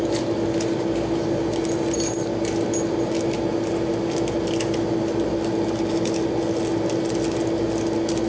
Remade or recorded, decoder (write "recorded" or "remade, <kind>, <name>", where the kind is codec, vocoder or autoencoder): recorded